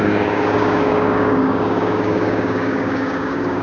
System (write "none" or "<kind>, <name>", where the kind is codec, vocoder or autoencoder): codec, DAC